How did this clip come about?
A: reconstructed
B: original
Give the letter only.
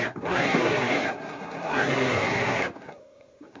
A